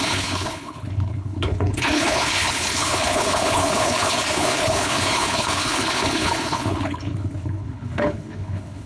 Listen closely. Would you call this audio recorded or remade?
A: remade